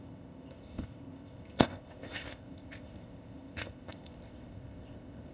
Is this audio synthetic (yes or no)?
yes